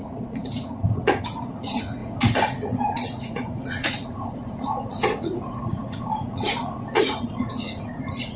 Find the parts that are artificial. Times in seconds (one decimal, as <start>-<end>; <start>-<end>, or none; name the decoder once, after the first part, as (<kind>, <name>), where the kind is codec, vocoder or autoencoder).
0.0-8.4 (vocoder, Vocos)